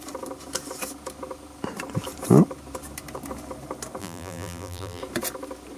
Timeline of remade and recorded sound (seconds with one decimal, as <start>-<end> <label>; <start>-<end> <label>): 0.0-4.0 recorded; 4.0-5.0 remade; 5.0-5.8 recorded